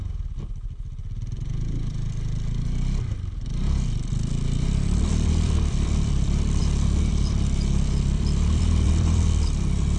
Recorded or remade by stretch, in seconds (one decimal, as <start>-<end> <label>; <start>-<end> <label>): 0.0-10.0 remade